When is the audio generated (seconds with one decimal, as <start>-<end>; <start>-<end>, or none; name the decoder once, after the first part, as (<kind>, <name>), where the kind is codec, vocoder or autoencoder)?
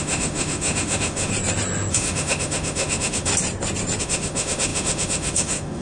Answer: 0.0-1.3 (autoencoder, DAC-VAE); 1.9-3.3; 4.0-5.8